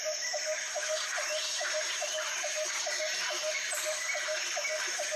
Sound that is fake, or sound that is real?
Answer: fake